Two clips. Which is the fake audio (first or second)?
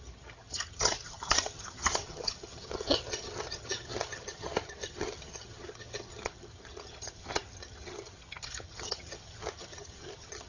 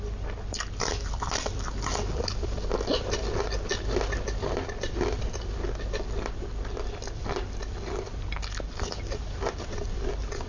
first